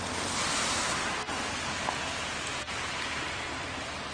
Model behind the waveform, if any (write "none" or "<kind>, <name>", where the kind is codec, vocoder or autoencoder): none